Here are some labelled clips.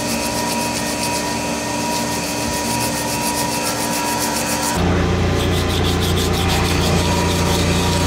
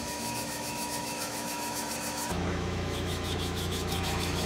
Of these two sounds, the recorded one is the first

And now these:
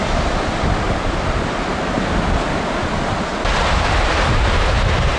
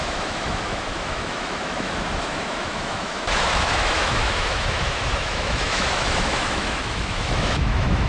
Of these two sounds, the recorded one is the first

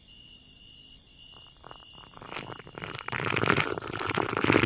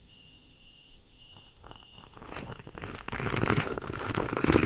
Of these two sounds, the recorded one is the first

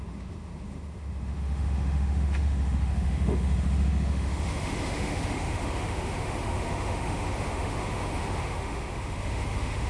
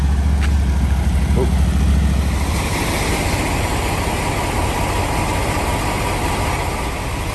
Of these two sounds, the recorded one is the second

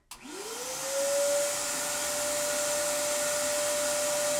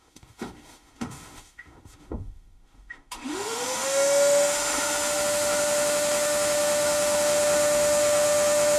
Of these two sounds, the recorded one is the first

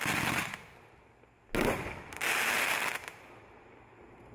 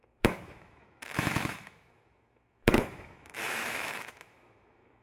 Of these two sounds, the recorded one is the first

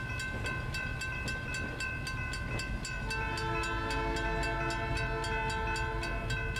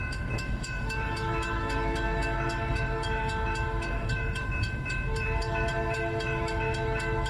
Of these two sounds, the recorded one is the first